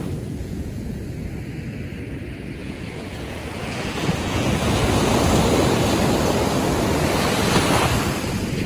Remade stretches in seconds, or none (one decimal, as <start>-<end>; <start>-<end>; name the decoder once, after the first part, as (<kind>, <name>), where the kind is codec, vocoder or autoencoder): 0.4-1.0 (vocoder, Vocos); 2.6-4.8